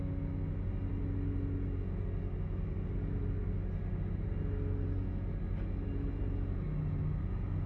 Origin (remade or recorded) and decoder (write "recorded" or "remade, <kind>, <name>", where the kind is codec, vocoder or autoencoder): recorded